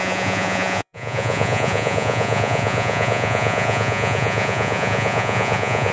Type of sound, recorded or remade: remade